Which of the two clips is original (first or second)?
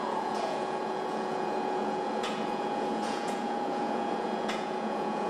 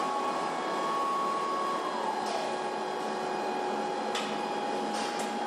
second